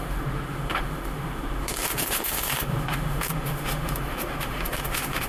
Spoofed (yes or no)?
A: yes